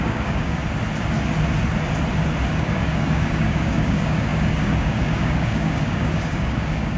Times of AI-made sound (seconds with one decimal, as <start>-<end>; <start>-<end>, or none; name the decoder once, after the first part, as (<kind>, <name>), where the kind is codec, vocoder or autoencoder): 0.0-0.6 (codec, DAC); 2.5-7.0